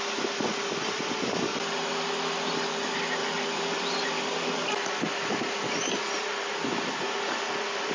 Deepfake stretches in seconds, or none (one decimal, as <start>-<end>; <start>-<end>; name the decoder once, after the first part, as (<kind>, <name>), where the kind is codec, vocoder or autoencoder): 3.2-5.5 (vocoder, BigVGAN v2)